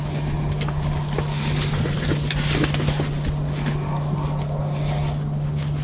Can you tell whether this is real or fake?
real